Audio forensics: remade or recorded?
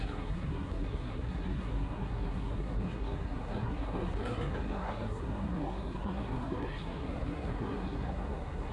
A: remade